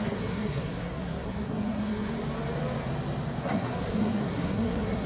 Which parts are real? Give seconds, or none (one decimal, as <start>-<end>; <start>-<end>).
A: 2.1-3.4